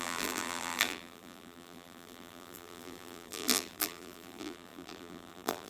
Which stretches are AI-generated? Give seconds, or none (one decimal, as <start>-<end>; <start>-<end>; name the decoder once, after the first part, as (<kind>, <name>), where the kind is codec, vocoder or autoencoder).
0.0-5.7 (vocoder, BigVGAN v2)